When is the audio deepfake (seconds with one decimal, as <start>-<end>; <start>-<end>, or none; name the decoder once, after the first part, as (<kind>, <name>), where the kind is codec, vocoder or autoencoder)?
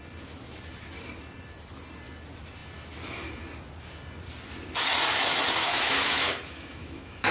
5.6-7.3 (autoencoder, DAC-VAE)